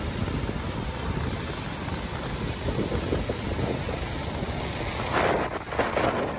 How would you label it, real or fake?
real